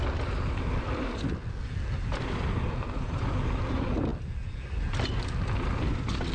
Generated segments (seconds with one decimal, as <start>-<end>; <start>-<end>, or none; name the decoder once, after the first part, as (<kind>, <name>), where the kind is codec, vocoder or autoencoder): none